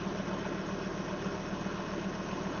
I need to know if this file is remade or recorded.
recorded